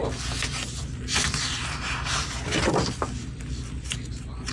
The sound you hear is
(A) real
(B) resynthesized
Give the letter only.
A